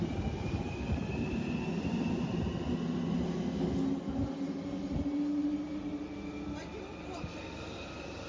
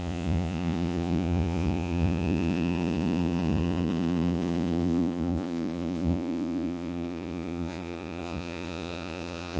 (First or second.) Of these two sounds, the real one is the first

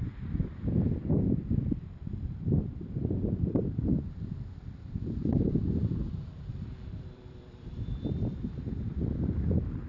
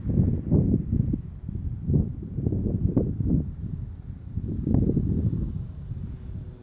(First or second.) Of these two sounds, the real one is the second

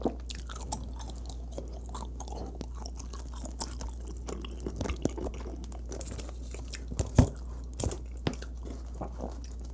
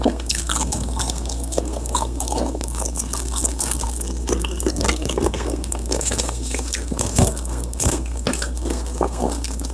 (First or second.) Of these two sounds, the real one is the first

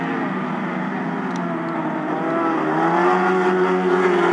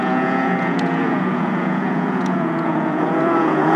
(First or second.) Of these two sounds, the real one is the first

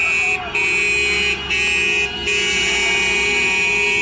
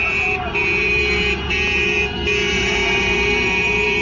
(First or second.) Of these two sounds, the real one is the first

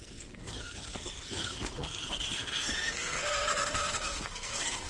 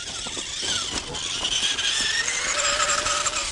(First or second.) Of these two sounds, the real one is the second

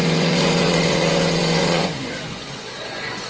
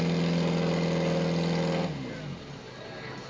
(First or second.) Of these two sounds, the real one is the second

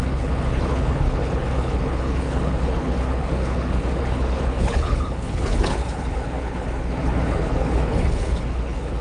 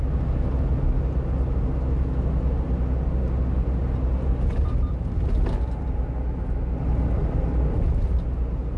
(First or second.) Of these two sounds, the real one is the second